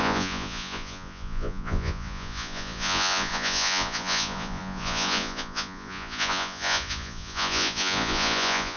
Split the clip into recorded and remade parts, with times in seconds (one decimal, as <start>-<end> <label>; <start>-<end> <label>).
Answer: 0.0-8.8 remade